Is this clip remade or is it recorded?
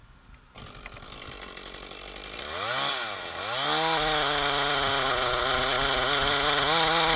recorded